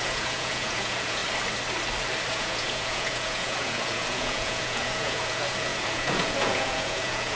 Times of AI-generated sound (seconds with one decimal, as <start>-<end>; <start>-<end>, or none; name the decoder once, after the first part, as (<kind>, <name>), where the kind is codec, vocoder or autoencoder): 0.0-1.2 (vocoder, Vocos); 2.3-7.4